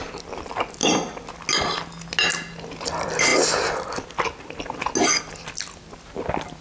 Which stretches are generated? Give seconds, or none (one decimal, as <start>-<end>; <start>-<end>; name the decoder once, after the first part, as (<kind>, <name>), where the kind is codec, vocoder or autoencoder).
none